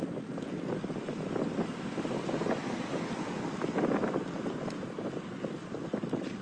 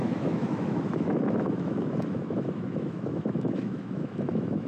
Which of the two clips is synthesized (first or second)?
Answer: second